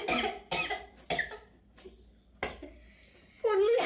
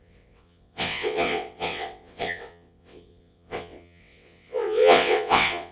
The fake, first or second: second